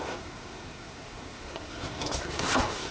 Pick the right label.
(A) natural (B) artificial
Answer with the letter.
B